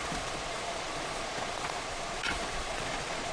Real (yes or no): no